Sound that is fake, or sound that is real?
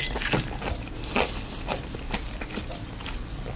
real